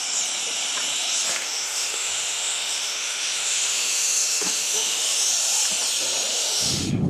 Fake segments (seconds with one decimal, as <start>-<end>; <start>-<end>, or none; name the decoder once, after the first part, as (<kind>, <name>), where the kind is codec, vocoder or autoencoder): 1.3-5.3 (autoencoder, DAC-VAE); 6.3-7.1